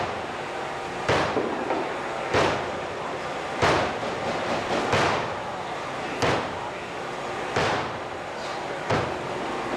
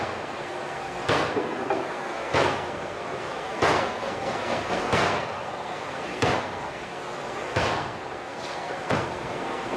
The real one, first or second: first